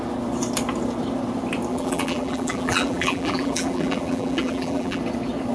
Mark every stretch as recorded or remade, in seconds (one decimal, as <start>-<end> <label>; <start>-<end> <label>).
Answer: 0.0-1.7 recorded; 1.7-5.0 remade; 5.0-5.5 recorded